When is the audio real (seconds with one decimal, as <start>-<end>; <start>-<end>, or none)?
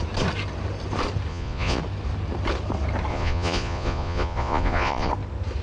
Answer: 0.0-1.3; 1.8-3.1; 5.1-5.6